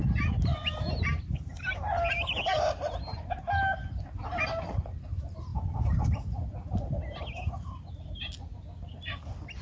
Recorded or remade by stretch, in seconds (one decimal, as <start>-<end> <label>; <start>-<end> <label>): 0.0-9.6 recorded